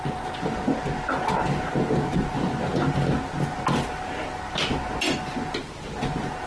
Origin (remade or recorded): recorded